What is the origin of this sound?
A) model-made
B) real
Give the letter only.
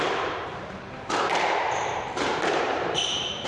A